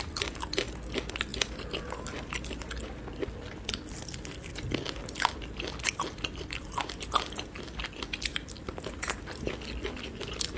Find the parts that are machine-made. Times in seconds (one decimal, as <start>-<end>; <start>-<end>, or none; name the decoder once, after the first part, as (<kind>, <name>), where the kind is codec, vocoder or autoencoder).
none